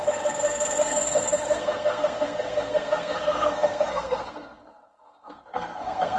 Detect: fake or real fake